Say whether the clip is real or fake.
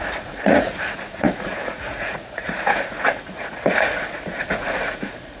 fake